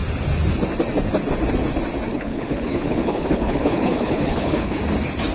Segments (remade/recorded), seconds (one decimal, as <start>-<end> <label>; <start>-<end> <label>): 0.0-2.1 recorded; 2.1-4.8 remade; 4.8-5.3 recorded